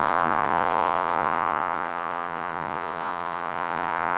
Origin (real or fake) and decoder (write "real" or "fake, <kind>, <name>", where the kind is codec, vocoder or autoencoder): fake, vocoder, Vocos